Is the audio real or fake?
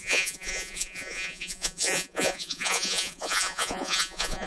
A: fake